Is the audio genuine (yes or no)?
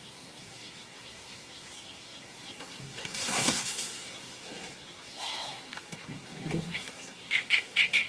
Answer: no